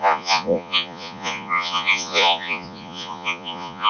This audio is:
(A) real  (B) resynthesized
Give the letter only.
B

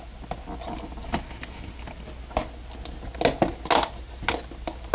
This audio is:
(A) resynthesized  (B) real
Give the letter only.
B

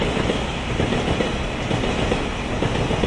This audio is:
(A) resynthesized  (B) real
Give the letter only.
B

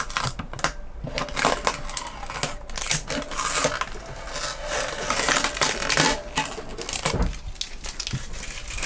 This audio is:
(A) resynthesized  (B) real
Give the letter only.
B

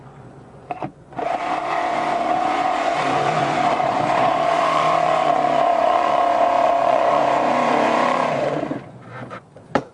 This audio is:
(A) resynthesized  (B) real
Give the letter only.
A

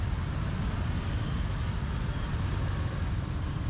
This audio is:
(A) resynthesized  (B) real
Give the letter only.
B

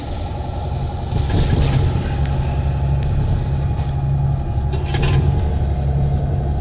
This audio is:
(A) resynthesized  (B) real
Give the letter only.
B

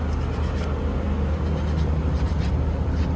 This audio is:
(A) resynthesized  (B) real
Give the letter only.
B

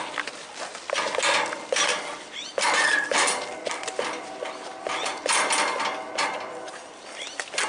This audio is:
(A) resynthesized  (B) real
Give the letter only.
B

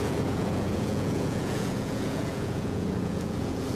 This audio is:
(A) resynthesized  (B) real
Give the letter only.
A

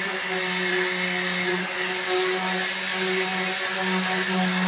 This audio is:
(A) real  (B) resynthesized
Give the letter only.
A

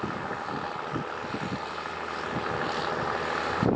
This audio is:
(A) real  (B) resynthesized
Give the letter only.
A